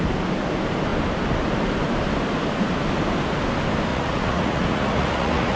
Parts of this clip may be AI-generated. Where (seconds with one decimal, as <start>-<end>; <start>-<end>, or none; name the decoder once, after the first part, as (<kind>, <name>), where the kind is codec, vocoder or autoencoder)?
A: 3.9-5.6 (vocoder, Vocos)